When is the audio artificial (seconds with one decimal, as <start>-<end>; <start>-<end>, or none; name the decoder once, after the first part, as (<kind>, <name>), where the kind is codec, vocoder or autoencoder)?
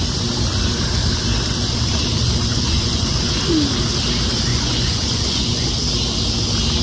2.5-3.3 (vocoder, Vocos); 4.5-5.7